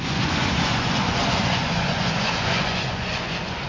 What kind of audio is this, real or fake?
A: fake